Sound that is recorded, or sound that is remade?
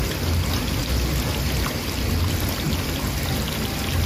recorded